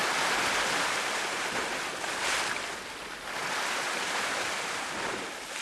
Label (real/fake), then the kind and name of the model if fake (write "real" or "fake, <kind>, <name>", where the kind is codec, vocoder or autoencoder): real